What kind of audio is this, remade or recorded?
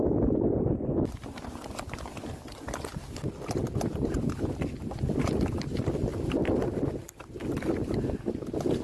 recorded